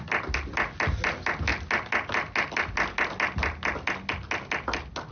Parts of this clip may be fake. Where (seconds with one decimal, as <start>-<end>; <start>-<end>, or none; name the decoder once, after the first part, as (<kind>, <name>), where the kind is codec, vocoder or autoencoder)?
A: none